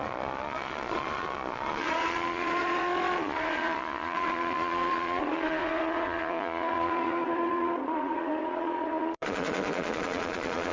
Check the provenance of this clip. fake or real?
fake